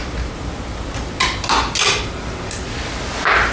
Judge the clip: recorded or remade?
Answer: recorded